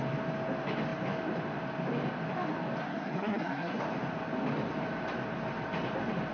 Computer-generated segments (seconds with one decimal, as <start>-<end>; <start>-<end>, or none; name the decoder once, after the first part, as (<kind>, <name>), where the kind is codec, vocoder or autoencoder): 2.8-3.8 (codec, SNAC)